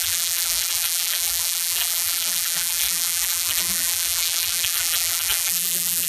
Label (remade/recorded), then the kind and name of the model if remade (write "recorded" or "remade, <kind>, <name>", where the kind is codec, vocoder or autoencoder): remade, vocoder, BigVGAN v2